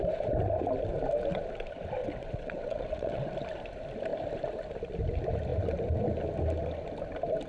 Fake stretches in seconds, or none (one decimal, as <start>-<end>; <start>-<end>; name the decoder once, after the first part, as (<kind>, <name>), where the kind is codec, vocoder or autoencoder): 2.0-3.2 (vocoder, WaveNeXt)